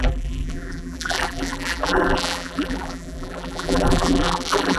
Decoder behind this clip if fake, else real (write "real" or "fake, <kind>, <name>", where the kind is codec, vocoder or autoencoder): fake, vocoder, BigVGAN v2